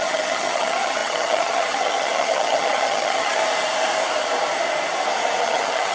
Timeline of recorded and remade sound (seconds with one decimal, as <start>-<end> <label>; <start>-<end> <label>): 0.0-3.4 remade; 3.4-5.4 recorded; 5.4-5.9 remade